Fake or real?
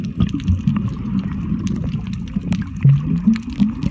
real